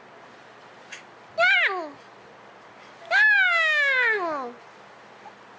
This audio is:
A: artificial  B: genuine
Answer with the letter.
B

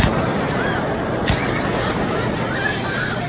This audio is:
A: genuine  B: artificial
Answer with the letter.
A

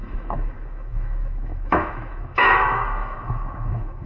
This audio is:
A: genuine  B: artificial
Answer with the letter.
B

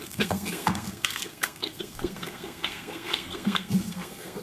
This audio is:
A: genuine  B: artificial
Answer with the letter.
B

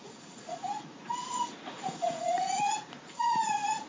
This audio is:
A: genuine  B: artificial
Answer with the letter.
B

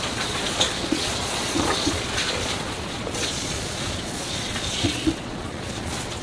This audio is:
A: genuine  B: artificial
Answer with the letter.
B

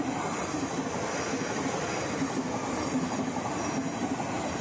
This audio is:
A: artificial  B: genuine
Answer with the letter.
B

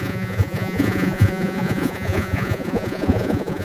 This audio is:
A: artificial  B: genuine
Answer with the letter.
A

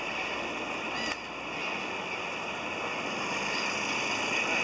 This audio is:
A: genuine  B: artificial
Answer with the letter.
A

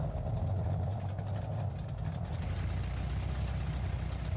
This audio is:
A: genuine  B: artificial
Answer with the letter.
A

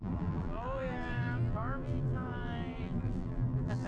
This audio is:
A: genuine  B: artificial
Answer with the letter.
B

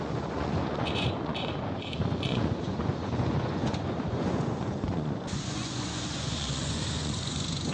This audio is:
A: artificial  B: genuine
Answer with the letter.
A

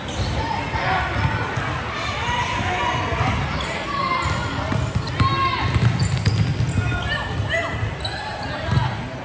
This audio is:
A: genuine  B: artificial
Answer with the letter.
A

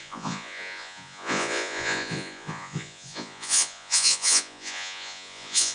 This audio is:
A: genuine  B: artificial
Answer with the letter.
B